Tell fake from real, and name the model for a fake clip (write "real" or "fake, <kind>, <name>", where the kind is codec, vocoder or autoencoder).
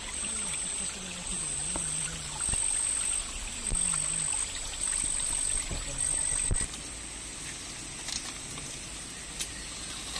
real